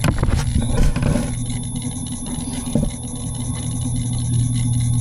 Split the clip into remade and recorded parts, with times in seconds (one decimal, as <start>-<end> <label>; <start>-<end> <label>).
0.0-5.0 recorded